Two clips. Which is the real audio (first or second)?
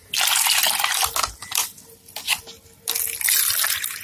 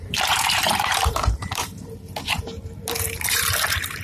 first